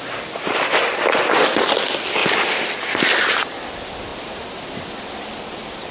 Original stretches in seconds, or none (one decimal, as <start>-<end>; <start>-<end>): 0.0-5.9